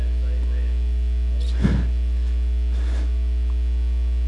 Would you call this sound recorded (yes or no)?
yes